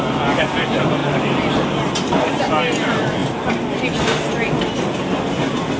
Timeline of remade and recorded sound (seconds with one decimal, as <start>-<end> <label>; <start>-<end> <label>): 0.0-1.0 recorded; 1.0-1.5 remade; 1.5-5.8 recorded